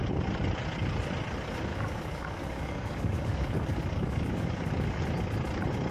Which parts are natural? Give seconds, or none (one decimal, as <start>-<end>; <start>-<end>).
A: 0.0-1.7; 5.0-5.9